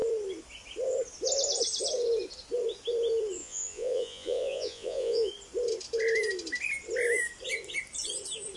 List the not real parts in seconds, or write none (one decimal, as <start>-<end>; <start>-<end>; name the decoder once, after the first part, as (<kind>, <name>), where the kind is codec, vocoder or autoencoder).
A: 3.4-5.3 (vocoder, Vocos)